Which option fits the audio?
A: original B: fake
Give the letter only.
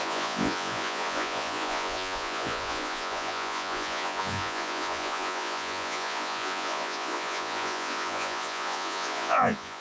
B